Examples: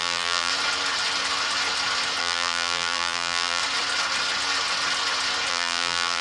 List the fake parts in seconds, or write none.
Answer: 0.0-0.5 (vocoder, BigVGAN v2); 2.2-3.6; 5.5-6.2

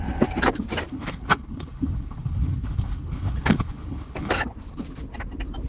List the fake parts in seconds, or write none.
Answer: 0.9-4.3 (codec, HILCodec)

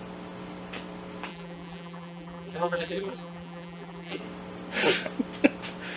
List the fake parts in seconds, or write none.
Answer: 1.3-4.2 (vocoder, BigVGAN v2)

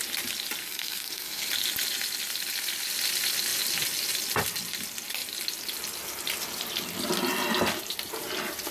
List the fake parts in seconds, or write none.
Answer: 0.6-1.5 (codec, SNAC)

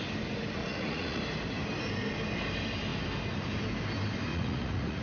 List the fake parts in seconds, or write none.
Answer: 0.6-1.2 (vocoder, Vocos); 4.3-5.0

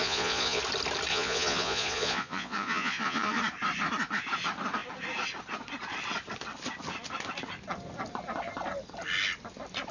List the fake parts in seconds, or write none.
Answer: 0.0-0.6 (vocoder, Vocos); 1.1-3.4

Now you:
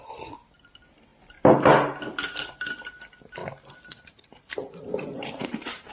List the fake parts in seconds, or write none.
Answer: 3.4-5.9 (vocoder, BigVGAN v2)

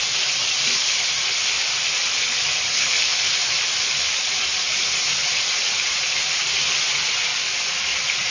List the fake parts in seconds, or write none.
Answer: 7.3-8.3 (vocoder, BigVGAN v2)